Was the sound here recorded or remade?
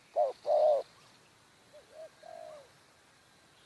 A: recorded